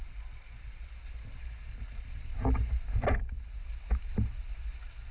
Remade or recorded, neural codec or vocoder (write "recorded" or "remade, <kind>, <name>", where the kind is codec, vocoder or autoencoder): recorded